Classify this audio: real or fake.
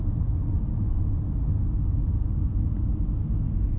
real